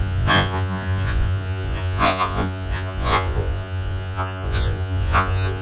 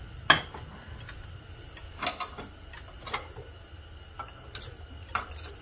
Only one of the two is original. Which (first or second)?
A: second